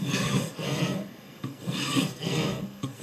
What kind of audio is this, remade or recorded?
remade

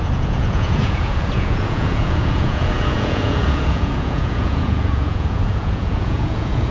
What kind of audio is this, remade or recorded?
remade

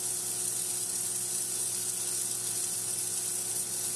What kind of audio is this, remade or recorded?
recorded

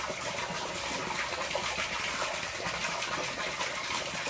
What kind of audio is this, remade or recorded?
recorded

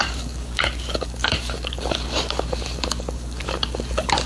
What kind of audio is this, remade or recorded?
remade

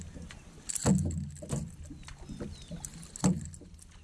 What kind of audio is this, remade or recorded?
recorded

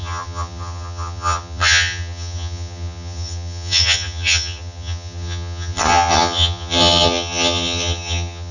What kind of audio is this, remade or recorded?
remade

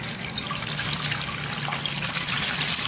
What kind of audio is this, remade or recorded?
recorded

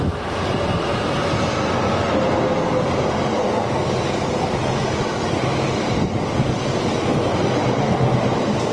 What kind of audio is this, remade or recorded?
recorded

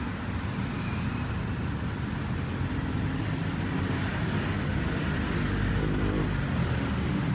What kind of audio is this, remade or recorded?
recorded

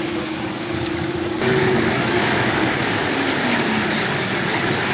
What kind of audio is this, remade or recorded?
remade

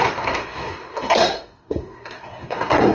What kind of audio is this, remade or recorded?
remade